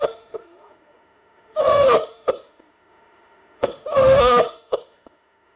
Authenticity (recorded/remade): remade